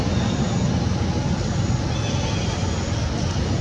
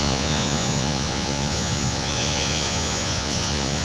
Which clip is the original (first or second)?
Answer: first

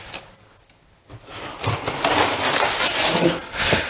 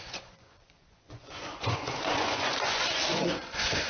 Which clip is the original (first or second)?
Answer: first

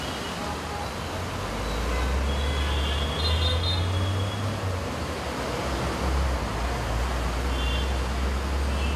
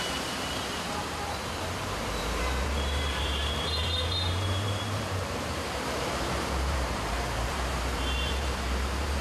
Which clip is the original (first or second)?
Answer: first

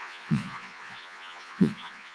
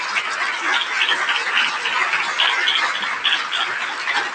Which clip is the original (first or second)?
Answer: second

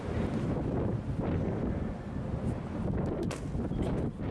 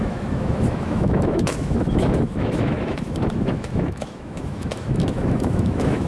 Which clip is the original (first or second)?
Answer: first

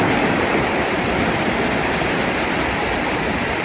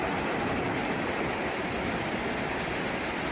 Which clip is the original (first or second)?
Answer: second